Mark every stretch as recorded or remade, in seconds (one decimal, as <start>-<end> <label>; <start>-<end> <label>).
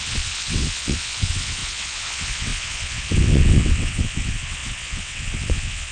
0.0-5.9 remade